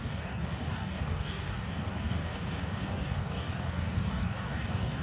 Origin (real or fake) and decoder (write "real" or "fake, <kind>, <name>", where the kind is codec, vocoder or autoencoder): fake, codec, DAC